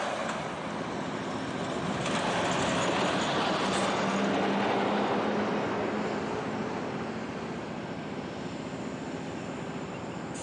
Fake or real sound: real